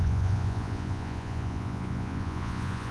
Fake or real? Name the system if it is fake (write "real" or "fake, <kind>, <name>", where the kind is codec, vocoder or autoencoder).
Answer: fake, vocoder, Vocos